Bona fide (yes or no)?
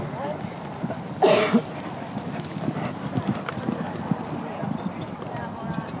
yes